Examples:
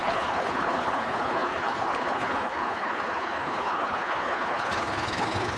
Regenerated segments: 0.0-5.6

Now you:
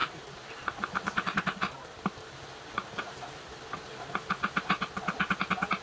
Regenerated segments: 0.0-3.5

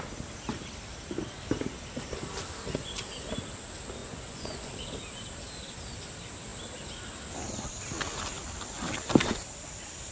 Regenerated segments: 4.0-4.7

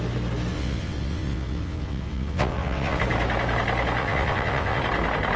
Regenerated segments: 0.5-3.0; 4.0-4.8

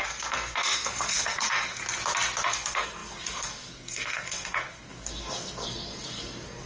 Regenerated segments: 0.0-1.8; 2.5-6.7

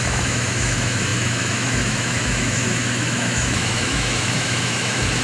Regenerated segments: 0.0-5.2

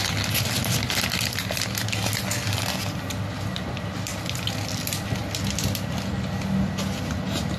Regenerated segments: none